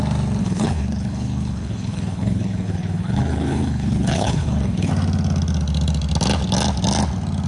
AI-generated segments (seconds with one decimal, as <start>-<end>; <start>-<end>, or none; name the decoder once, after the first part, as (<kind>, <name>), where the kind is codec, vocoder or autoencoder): 0.4-4.9 (codec, HILCodec)